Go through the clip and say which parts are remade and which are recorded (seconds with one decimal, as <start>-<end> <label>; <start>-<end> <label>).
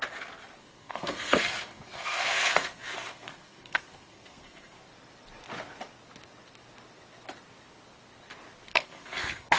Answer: 0.0-0.6 recorded; 0.6-4.8 remade; 4.8-8.7 recorded; 8.7-9.6 remade